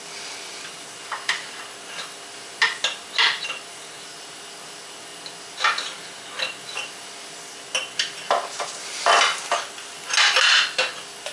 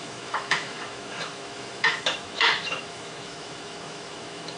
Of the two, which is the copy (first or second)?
second